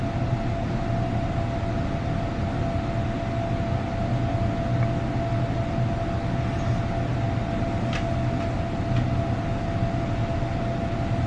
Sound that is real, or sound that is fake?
real